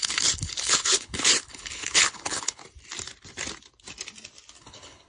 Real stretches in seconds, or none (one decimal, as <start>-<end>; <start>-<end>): 2.6-4.6